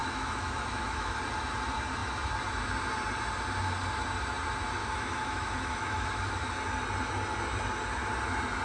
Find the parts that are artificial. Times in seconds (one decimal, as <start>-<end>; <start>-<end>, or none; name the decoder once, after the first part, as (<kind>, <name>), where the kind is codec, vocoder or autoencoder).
0.0-1.2 (autoencoder, DAC-VAE); 4.8-6.5